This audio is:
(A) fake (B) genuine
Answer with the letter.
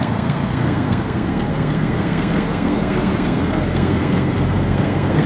A